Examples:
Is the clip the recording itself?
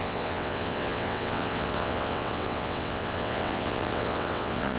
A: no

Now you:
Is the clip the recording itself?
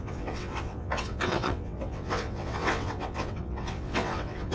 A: no